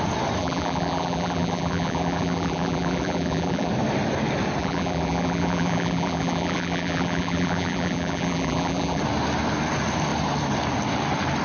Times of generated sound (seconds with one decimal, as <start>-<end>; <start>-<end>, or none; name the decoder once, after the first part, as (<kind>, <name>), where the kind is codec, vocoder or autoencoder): 0.4-3.7 (vocoder, BigVGAN v2); 4.6-9.0